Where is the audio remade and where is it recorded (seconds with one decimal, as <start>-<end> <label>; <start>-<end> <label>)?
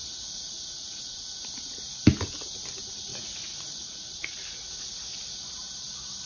0.0-1.1 remade; 1.1-3.1 recorded; 3.1-4.3 remade; 4.3-6.3 recorded